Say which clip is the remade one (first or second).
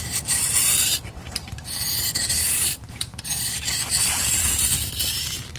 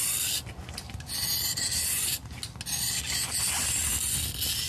first